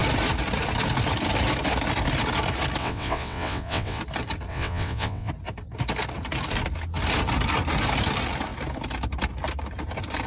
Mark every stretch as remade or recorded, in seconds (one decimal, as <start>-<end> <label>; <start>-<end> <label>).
0.0-2.8 recorded; 2.8-4.0 remade; 4.0-4.5 recorded; 4.5-5.3 remade; 5.3-10.3 recorded